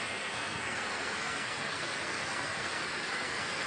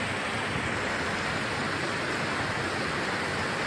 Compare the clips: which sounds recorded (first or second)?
second